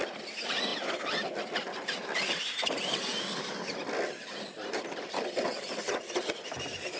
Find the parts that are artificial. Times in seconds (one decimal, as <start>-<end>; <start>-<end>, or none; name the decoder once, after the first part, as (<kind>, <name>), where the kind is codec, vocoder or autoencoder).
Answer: none